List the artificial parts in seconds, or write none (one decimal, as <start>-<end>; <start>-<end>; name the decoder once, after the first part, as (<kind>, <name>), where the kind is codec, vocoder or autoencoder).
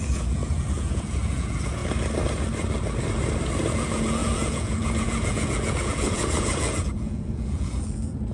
0.0-1.8 (vocoder, Vocos); 3.7-8.3